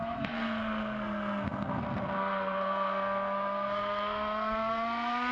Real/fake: fake